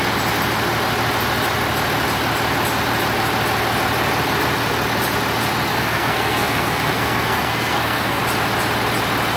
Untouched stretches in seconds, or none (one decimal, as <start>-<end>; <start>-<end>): 0.0-5.7; 8.2-9.4